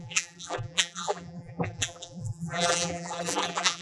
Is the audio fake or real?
fake